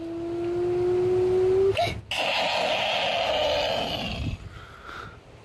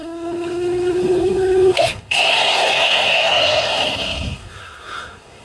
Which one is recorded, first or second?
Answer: first